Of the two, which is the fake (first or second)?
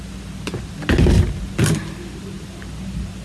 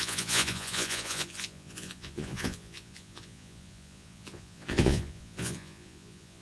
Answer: second